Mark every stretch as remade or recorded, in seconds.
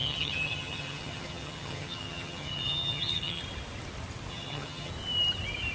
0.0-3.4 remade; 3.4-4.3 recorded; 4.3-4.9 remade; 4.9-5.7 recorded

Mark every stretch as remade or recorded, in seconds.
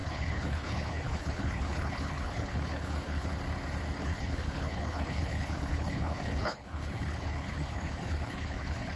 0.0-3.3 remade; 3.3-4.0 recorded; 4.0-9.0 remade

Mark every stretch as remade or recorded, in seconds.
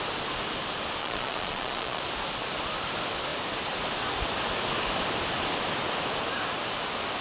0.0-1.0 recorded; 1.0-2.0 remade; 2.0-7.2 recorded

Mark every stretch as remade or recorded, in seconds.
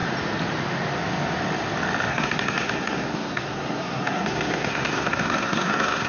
0.0-2.1 recorded; 2.1-6.1 remade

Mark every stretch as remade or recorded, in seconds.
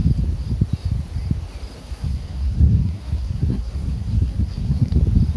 0.0-1.8 recorded; 1.8-5.0 remade; 5.0-5.4 recorded